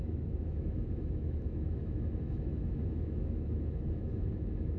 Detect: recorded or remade remade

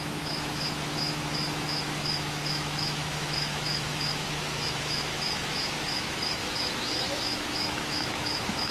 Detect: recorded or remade remade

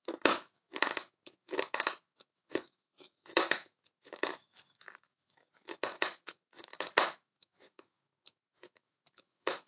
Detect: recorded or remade remade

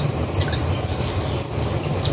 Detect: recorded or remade recorded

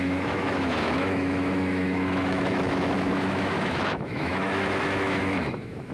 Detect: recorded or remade remade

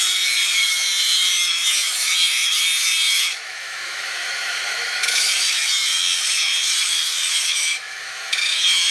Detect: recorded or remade remade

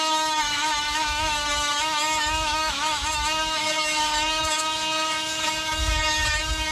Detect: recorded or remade remade